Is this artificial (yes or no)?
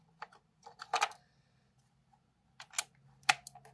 no